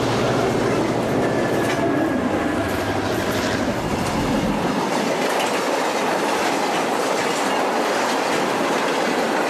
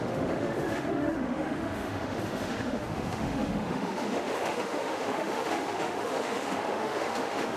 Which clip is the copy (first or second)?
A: second